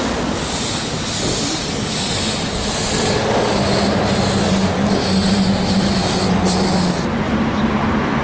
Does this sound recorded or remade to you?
recorded